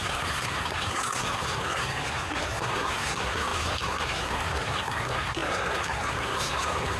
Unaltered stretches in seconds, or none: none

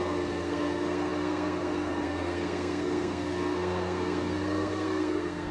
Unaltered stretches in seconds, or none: none

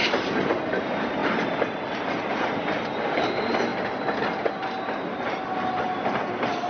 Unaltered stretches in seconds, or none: 0.0-6.7

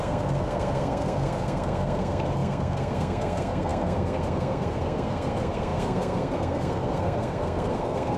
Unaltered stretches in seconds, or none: none

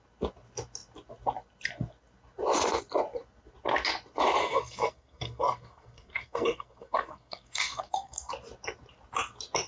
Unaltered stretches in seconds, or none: 0.0-4.4; 8.3-9.7

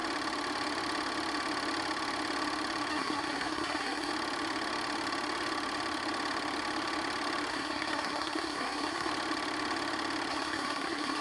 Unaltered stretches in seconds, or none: 0.0-2.9; 4.1-7.5; 9.1-10.3

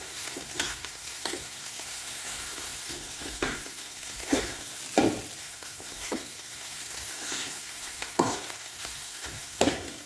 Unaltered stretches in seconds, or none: 4.8-5.4

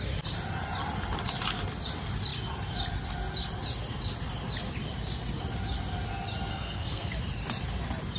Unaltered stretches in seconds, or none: 0.0-6.5; 7.1-8.2